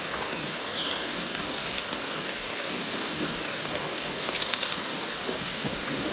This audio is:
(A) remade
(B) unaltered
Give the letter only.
A